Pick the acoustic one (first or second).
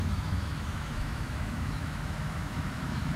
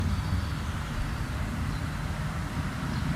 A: second